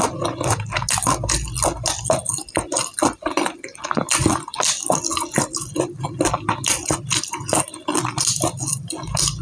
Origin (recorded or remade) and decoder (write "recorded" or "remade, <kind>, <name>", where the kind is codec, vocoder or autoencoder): recorded